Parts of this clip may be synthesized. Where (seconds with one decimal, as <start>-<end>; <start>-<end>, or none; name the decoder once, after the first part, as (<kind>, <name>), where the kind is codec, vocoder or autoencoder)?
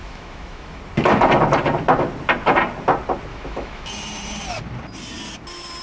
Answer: 0.0-0.8 (autoencoder, DAC-VAE); 3.3-3.9